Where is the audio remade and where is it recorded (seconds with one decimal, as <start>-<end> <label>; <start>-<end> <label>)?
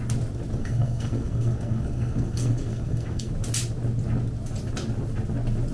0.0-0.6 recorded; 0.6-3.3 remade; 3.3-5.7 recorded